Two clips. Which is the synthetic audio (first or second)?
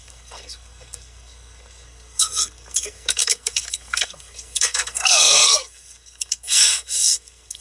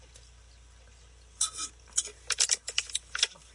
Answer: first